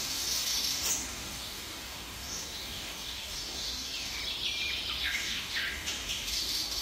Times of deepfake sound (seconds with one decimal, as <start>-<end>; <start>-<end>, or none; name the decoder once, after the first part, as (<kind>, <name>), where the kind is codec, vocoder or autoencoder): 0.0-4.2 (codec, DAC); 5.0-6.8